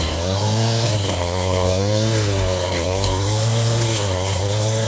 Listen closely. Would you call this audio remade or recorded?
remade